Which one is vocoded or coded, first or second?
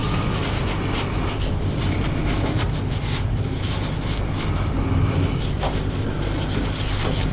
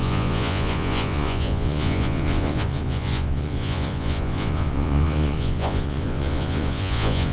second